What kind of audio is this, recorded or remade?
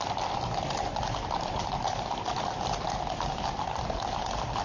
recorded